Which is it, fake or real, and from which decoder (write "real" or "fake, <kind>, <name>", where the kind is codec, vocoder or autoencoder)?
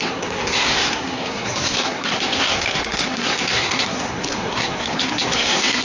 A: fake, codec, SNAC